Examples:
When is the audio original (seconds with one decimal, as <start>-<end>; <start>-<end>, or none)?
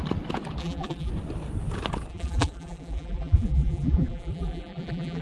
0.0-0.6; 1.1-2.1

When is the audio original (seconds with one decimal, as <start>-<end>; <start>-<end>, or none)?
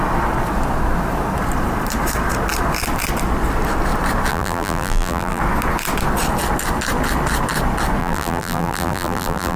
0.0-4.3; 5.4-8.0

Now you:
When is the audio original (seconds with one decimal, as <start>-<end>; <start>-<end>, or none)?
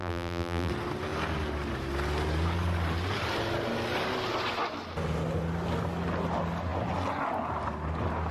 0.7-8.3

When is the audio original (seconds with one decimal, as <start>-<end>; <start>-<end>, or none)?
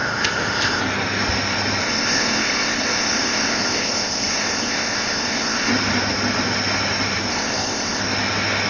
0.8-1.8; 5.7-7.3; 8.0-8.7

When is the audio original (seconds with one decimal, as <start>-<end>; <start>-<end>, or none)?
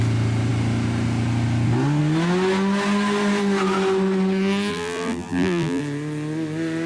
0.0-4.7; 5.8-6.9